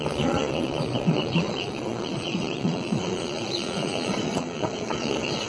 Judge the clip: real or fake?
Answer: fake